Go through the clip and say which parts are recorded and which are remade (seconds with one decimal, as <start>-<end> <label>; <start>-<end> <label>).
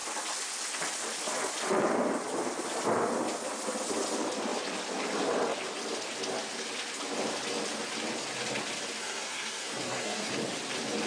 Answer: 0.0-9.0 recorded; 9.0-10.3 remade; 10.3-11.1 recorded